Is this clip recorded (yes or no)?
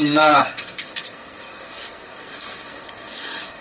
no